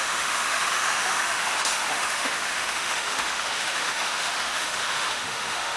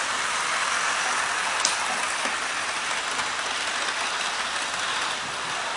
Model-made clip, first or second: first